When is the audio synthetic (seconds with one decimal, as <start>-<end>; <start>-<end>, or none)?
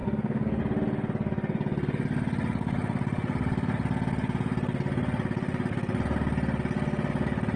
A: 0.0-0.6